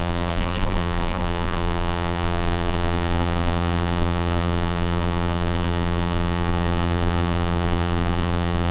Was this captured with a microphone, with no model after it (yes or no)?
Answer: no